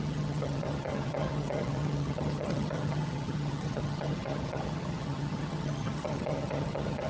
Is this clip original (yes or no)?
no